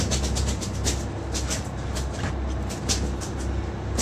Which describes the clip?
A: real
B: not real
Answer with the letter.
A